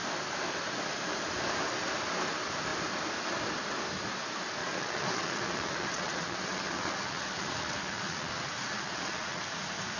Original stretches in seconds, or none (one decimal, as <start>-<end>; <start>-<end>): 0.0-4.6; 9.4-10.0